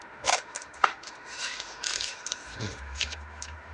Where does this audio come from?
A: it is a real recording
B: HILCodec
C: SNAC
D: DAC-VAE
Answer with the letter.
D